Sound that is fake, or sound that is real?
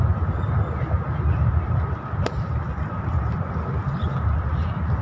real